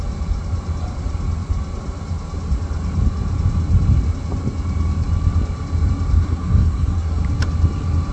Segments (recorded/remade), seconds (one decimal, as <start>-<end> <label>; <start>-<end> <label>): 0.0-6.2 recorded; 6.2-7.2 remade; 7.2-8.1 recorded